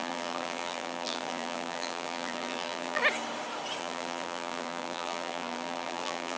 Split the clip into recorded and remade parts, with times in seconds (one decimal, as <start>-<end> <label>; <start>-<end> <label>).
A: 0.0-3.0 remade; 3.0-3.8 recorded; 3.8-6.4 remade

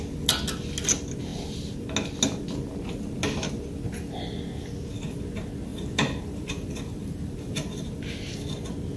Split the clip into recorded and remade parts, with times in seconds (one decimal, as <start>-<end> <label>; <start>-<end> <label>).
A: 0.0-5.7 recorded; 5.7-8.1 remade; 8.1-9.0 recorded